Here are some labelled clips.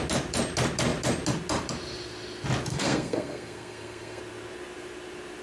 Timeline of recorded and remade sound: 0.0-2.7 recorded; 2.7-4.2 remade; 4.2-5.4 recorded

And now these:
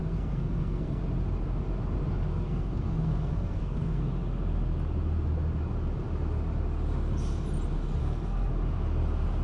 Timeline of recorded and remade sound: 0.0-1.0 remade; 1.0-2.3 recorded; 2.3-4.0 remade; 4.0-8.0 recorded; 8.0-8.5 remade; 8.5-9.4 recorded

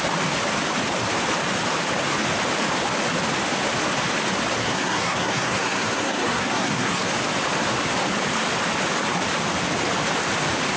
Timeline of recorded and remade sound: 0.0-4.6 recorded; 4.6-7.1 remade; 7.1-10.8 recorded

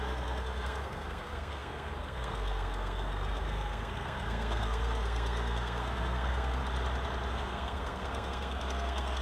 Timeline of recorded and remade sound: 0.0-6.6 remade; 6.6-7.3 recorded; 7.3-9.2 remade

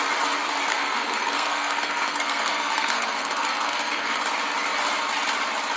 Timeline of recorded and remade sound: 0.0-0.7 recorded; 0.7-4.2 remade; 4.2-5.8 recorded